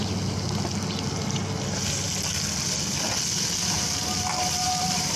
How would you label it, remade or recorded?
recorded